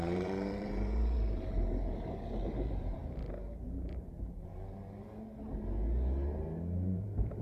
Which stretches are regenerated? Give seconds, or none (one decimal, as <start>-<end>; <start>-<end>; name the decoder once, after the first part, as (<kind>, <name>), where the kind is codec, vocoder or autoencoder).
0.0-3.0 (vocoder, BigVGAN v2); 3.6-4.5; 7.0-7.4